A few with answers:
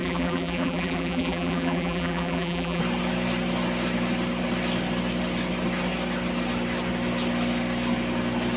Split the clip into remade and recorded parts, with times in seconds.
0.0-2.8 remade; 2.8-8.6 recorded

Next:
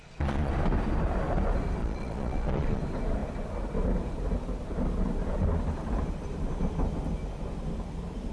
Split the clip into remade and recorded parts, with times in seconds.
0.0-0.5 remade; 0.5-1.8 recorded; 1.8-2.8 remade; 2.8-8.3 recorded

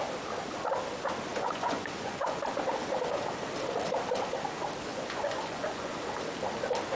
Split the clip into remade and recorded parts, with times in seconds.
0.0-1.3 recorded; 1.3-2.4 remade; 2.4-4.9 recorded; 4.9-5.9 remade; 5.9-7.0 recorded